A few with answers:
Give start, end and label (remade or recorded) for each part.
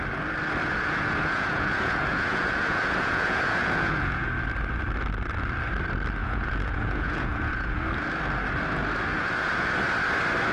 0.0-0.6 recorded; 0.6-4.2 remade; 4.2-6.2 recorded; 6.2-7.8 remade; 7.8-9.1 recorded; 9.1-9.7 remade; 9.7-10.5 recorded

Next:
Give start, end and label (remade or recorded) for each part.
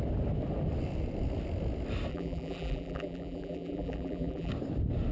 0.0-2.1 recorded; 2.1-4.5 remade; 4.5-5.1 recorded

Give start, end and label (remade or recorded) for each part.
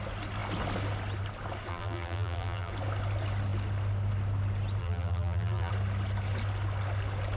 0.0-1.7 recorded; 1.7-2.7 remade; 2.7-4.8 recorded; 4.8-5.7 remade; 5.7-7.4 recorded